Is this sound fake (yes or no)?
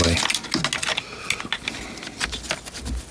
no